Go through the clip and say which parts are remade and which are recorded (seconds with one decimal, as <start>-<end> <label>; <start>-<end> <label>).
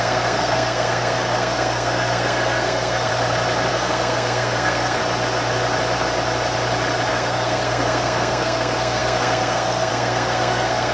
0.0-3.1 remade; 3.1-3.7 recorded; 3.7-5.0 remade; 5.0-7.1 recorded; 7.1-10.9 remade